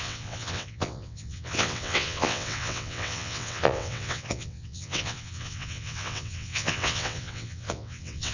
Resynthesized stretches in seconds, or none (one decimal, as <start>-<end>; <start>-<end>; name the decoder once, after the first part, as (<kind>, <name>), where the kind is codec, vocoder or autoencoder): 0.0-8.3 (vocoder, WaveNeXt)